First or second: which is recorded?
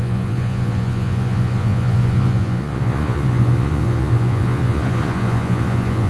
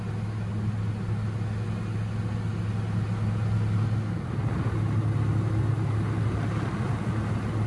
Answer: second